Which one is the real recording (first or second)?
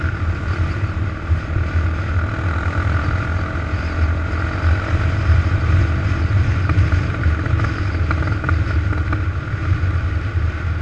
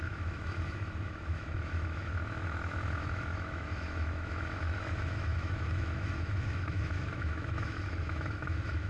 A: first